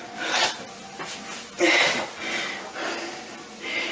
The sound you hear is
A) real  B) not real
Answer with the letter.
A